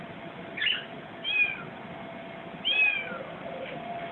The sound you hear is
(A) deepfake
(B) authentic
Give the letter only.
B